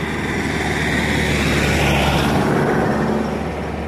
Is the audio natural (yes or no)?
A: yes